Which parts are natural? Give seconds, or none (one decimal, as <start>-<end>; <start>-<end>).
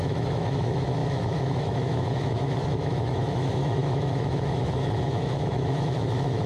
none